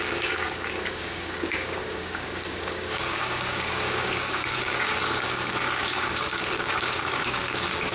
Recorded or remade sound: remade